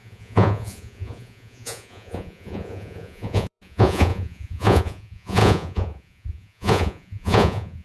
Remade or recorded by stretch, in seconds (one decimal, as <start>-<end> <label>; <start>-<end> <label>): 0.0-7.8 remade